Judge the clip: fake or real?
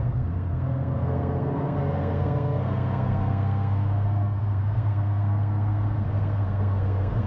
fake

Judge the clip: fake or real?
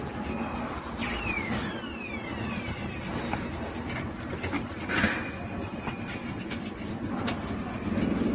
real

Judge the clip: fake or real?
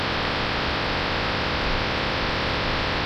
real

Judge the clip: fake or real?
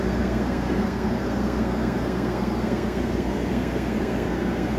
fake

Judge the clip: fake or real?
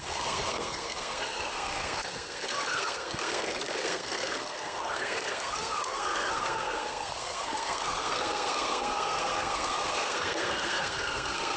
fake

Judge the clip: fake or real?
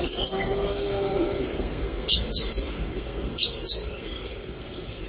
fake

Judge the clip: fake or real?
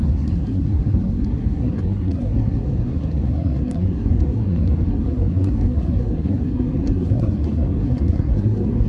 fake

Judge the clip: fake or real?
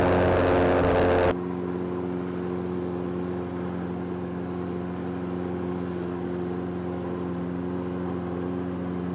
real